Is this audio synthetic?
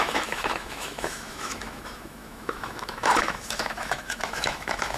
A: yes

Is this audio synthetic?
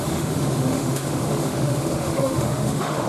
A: yes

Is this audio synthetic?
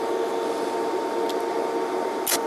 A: no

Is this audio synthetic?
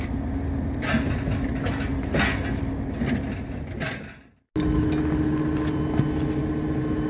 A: no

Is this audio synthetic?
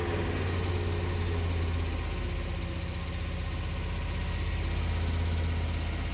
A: no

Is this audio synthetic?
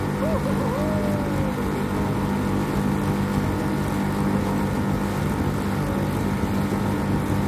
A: no